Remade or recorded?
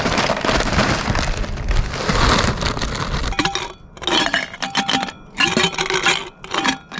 recorded